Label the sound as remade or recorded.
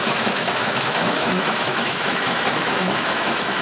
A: remade